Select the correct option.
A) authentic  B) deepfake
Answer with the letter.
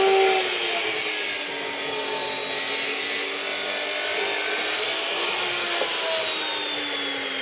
A